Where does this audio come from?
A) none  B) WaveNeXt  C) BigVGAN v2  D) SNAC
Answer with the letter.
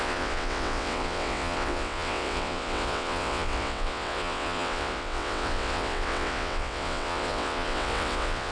B